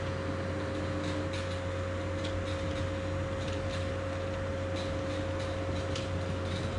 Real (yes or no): yes